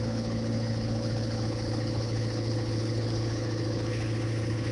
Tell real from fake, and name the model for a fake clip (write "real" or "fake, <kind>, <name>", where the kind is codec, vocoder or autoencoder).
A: fake, codec, HILCodec